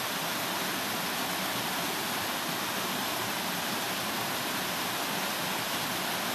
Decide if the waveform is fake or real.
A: real